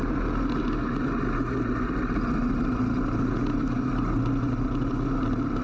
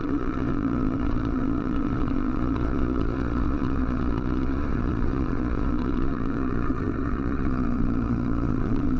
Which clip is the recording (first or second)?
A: first